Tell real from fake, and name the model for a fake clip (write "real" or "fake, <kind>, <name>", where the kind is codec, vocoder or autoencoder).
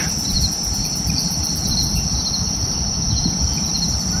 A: real